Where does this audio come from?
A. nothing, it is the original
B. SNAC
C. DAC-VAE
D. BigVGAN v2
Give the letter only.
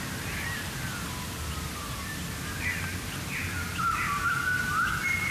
A